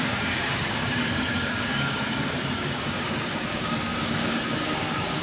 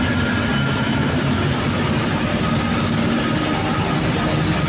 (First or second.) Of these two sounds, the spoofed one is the first